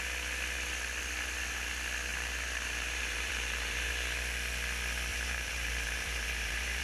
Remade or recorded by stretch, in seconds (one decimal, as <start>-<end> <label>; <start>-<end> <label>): 0.0-2.1 recorded; 2.1-3.9 remade; 3.9-5.1 recorded; 5.1-6.8 remade